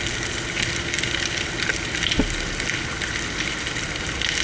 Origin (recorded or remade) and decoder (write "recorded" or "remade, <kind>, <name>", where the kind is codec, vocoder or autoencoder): recorded